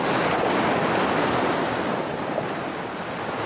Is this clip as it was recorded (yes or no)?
yes